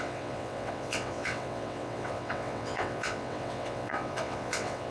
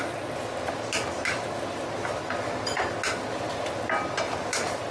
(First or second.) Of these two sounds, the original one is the second